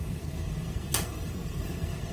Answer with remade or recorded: remade